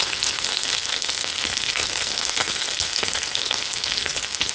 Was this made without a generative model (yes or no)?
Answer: no